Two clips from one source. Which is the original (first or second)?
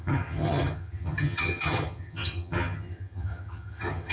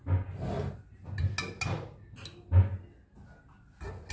second